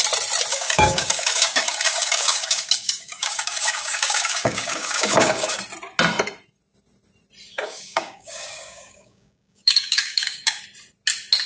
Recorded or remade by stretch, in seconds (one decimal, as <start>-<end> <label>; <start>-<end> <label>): 0.0-0.5 recorded; 0.5-5.6 remade; 5.6-7.5 recorded; 7.5-10.6 remade; 10.6-11.5 recorded